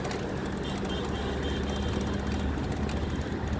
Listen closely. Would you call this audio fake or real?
real